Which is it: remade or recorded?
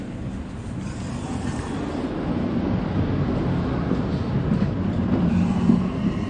recorded